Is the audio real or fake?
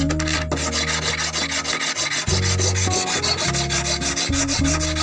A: real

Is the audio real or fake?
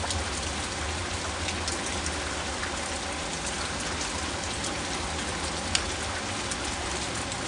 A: real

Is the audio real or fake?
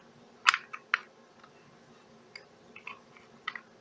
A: real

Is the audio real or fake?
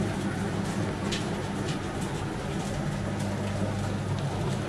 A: real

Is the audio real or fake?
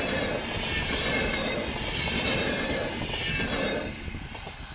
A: real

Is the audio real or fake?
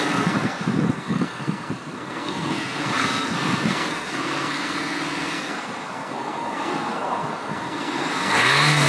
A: fake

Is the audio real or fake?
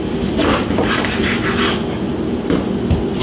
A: real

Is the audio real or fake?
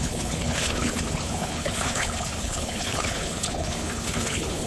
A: fake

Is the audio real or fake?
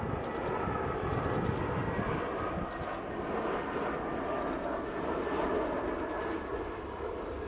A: real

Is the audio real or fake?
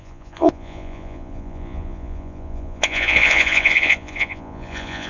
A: fake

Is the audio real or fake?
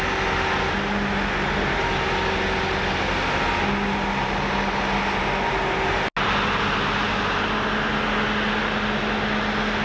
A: real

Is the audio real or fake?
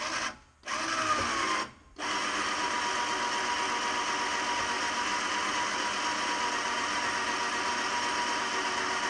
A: real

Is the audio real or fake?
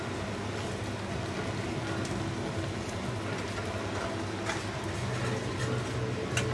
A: real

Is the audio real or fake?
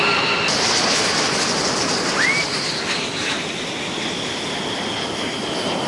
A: real